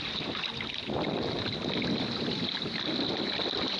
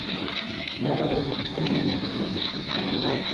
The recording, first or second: first